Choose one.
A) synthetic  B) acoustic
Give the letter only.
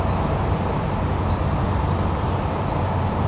B